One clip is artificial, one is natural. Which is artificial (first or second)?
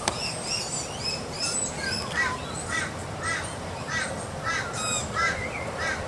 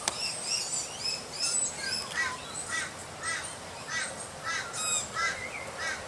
first